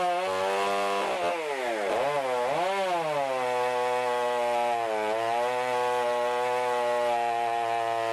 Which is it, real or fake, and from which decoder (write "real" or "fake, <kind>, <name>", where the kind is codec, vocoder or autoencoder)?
real